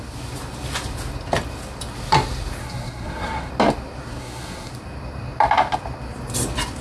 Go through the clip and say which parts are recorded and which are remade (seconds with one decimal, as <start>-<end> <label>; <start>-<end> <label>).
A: 0.0-2.6 recorded; 2.6-3.5 remade; 3.5-4.2 recorded; 4.2-4.7 remade; 4.7-6.8 recorded